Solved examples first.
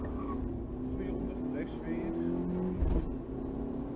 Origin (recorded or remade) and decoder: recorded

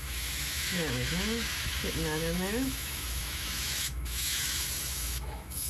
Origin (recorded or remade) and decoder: remade, autoencoder, DAC-VAE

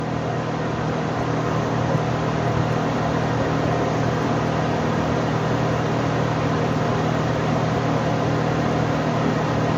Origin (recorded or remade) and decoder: recorded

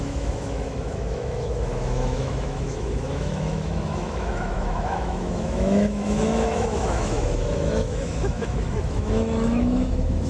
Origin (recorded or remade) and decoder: remade, autoencoder, DAC-VAE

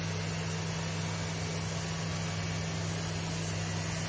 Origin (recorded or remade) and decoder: recorded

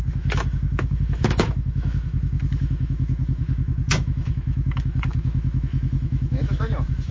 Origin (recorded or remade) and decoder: remade, autoencoder, DAC-VAE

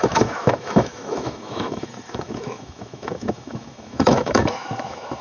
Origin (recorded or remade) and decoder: remade, autoencoder, DAC-VAE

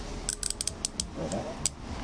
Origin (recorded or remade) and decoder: recorded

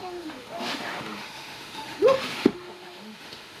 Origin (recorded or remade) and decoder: remade, autoencoder, DAC-VAE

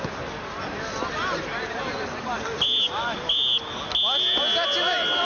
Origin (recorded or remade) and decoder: recorded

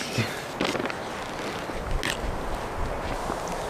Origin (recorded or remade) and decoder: recorded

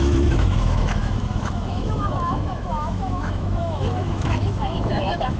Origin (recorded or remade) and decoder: remade, autoencoder, DAC-VAE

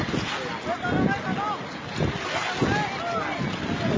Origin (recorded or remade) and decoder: recorded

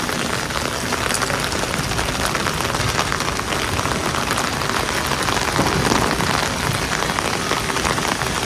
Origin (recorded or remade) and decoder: recorded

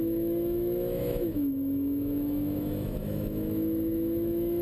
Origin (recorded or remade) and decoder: remade, autoencoder, DAC-VAE